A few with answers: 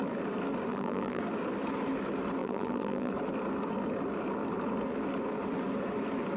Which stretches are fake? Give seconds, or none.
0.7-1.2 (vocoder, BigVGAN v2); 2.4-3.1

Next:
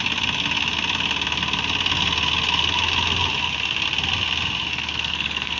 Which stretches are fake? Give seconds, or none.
4.7-5.6 (codec, SNAC)

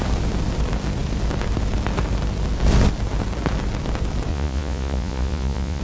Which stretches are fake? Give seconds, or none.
4.3-5.8 (vocoder, Vocos)